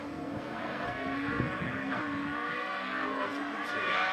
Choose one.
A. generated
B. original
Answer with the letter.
A